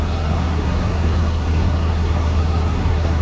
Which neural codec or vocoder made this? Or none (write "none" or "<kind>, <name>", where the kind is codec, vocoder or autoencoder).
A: codec, SNAC